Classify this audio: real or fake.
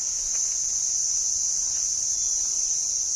real